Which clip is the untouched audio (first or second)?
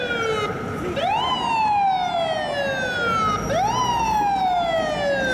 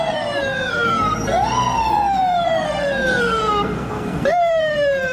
first